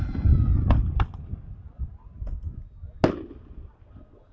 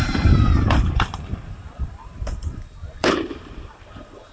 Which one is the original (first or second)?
first